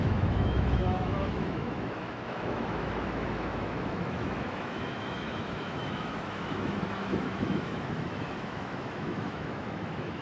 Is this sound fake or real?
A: fake